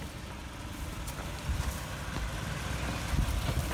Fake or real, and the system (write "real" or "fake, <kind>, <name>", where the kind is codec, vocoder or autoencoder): real